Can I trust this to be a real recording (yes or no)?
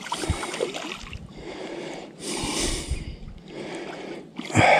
yes